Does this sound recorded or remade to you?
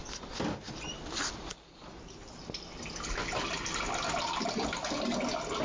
recorded